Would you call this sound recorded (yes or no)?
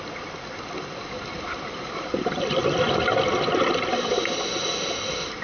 yes